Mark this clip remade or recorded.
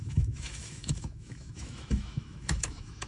remade